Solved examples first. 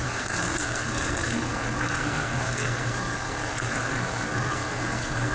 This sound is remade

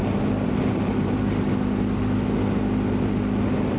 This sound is recorded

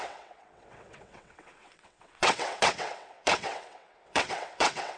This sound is remade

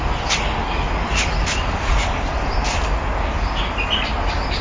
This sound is recorded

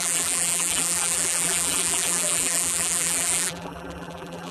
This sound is remade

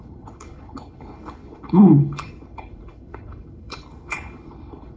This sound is remade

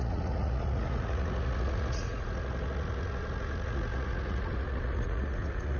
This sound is remade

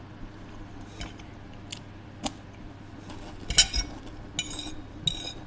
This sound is recorded